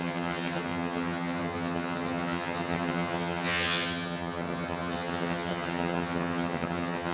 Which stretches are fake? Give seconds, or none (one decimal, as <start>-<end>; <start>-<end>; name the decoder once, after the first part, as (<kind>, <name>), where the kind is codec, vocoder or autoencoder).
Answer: 0.0-7.1 (vocoder, HiFi-GAN)